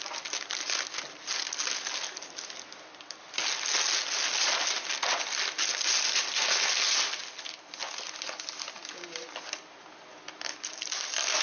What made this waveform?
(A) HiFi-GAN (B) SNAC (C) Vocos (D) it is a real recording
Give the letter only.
D